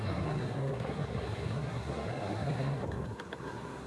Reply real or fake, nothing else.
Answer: fake